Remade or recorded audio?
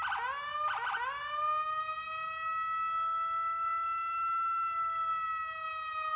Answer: recorded